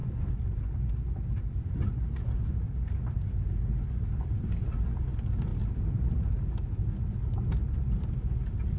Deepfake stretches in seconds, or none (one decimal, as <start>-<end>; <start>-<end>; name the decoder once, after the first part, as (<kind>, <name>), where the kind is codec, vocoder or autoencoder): 5.5-6.7 (vocoder, BigVGAN v2)